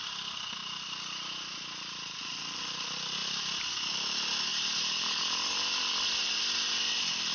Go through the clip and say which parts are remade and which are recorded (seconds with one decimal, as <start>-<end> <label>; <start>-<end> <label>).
0.0-4.5 recorded; 4.5-5.8 remade; 5.8-7.3 recorded